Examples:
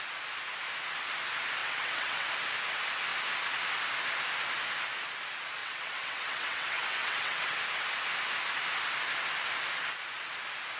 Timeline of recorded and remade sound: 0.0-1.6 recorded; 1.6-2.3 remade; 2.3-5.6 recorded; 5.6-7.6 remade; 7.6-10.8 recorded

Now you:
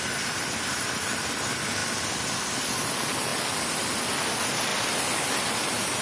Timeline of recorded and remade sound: 0.0-6.0 recorded

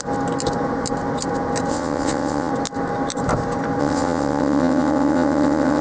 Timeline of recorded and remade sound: 0.0-1.7 recorded; 1.7-2.5 remade; 2.5-3.8 recorded; 3.8-5.8 remade

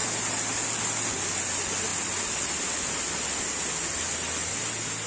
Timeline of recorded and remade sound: 0.0-5.1 recorded

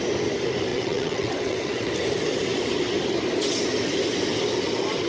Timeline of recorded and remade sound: 0.0-0.7 recorded; 0.7-1.9 remade; 1.9-5.1 recorded

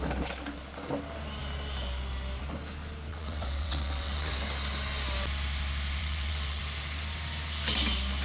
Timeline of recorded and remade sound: 0.0-3.1 recorded; 3.1-4.3 remade; 4.3-6.0 recorded; 6.0-6.6 remade; 6.6-8.2 recorded